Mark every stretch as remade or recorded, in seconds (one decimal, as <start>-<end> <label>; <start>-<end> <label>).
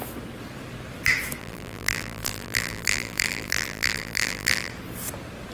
0.0-1.4 recorded; 1.4-4.7 remade; 4.7-5.5 recorded